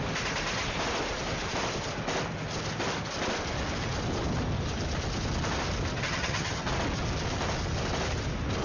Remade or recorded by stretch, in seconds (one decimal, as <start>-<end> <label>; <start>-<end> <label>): 0.0-5.9 recorded; 5.9-6.7 remade; 6.7-8.6 recorded